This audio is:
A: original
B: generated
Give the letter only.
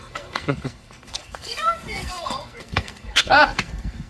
B